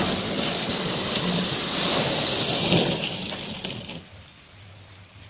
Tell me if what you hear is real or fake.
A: real